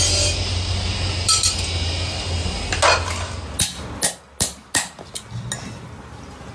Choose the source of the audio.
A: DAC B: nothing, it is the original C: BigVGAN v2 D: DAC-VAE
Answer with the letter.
B